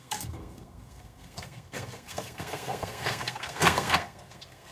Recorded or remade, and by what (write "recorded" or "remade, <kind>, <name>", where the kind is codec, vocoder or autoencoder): remade, codec, SNAC